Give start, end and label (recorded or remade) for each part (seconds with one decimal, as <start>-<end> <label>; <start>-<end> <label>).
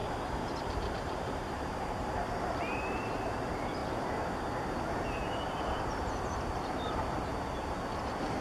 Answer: 0.0-0.9 recorded; 0.9-3.8 remade; 3.8-6.2 recorded; 6.2-7.3 remade; 7.3-8.4 recorded